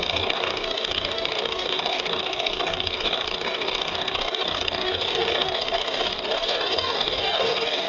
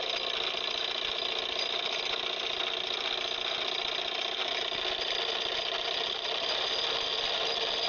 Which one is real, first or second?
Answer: second